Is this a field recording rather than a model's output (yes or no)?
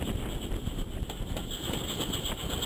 yes